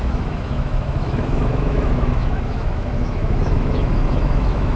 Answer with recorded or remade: remade